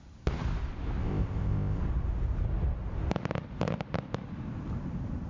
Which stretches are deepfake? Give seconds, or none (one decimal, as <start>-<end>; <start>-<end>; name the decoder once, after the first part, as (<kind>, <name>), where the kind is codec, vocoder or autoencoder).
1.0-1.8 (codec, ZipCodec)